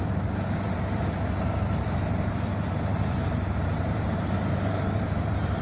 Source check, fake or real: fake